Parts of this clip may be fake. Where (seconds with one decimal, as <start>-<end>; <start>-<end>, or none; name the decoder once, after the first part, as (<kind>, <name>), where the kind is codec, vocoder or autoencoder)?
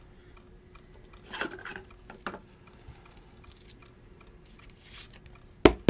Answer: none